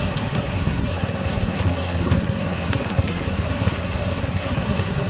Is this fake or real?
fake